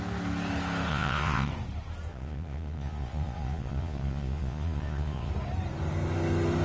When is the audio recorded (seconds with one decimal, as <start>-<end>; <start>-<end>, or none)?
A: 0.0-0.9; 1.5-2.1; 5.3-6.6